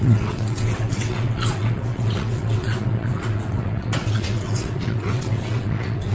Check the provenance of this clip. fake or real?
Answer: fake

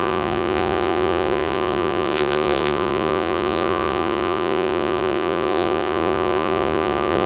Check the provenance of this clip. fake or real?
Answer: fake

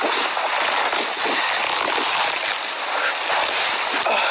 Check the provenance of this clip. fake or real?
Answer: real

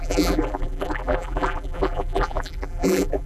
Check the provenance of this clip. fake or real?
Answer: fake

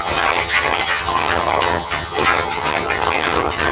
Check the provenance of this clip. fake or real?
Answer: fake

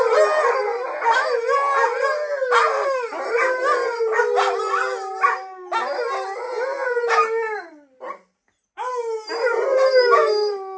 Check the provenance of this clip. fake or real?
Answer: real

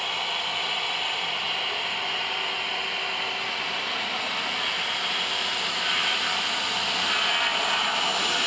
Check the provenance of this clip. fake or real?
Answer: real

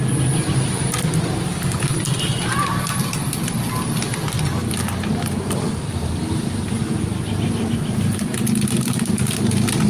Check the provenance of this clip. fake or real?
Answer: real